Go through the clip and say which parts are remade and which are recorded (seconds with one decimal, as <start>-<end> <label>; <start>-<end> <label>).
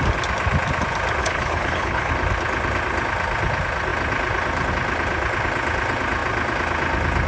0.0-1.2 recorded; 1.2-2.1 remade; 2.1-7.3 recorded